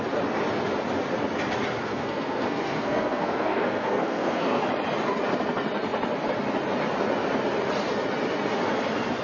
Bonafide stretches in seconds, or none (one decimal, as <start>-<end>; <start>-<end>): 0.0-1.8; 4.6-9.2